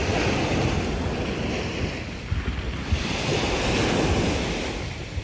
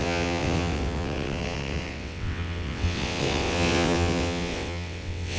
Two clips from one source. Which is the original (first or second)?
first